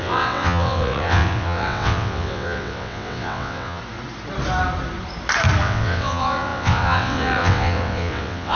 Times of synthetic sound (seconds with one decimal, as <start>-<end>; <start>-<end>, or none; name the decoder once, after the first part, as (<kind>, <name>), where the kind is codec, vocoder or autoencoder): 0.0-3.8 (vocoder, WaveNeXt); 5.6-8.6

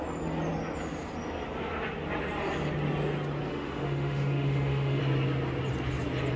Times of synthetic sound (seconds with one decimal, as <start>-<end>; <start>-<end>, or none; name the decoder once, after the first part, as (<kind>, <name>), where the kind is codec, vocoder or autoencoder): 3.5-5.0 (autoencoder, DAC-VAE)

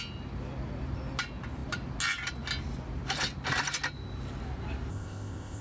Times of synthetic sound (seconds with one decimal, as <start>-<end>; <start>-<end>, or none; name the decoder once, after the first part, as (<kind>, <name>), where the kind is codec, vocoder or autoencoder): 4.9-5.6 (codec, ZipCodec)